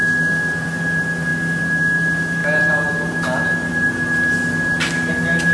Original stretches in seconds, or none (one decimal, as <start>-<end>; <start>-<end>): 0.0-5.5